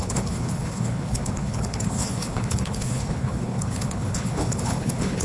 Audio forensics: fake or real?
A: fake